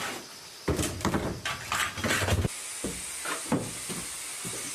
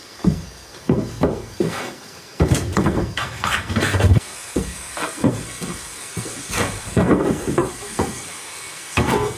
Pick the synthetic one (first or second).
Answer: second